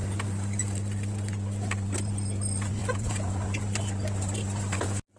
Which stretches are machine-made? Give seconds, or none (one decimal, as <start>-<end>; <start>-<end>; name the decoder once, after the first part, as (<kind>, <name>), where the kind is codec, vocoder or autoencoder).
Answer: 2.8-3.6 (vocoder, Vocos)